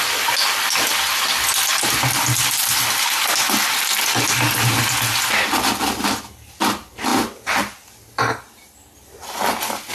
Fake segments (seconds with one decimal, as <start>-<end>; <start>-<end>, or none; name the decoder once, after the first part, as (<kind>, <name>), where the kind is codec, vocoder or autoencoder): none